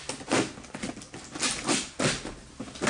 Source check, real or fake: real